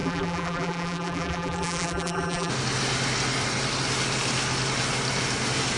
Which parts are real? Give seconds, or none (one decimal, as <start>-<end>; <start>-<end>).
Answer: 2.5-5.8